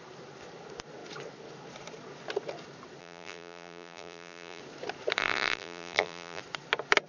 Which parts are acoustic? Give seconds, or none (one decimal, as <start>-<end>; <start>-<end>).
0.0-3.0; 4.6-5.2; 6.4-7.1